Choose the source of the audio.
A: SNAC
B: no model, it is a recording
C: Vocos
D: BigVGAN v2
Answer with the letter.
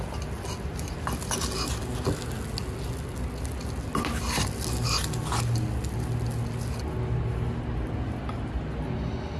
B